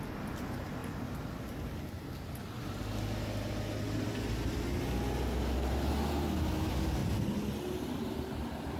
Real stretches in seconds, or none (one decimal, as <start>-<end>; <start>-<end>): 0.0-8.8